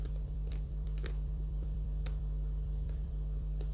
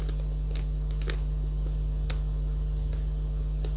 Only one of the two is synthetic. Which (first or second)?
first